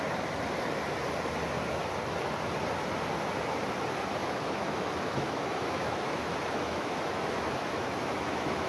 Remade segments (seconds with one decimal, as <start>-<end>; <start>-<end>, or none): 4.2-8.7